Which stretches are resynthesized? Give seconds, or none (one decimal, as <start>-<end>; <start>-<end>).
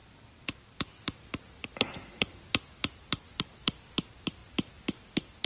0.0-5.5